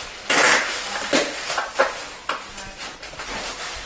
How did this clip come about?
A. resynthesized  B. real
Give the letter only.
B